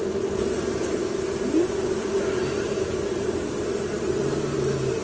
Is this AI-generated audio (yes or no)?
no